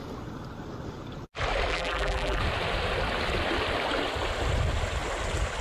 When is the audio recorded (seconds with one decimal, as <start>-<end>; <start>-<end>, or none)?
0.0-1.7; 2.4-5.6